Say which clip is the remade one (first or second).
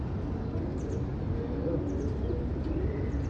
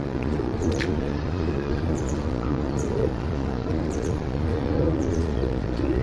second